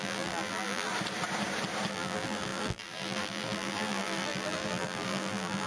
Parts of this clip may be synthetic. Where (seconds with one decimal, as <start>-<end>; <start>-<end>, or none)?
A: 0.0-0.9; 1.9-5.7